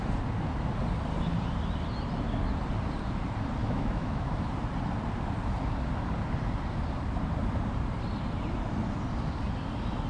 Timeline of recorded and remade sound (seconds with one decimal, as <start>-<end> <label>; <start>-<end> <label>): 0.0-3.6 recorded; 3.6-4.5 remade; 4.5-10.1 recorded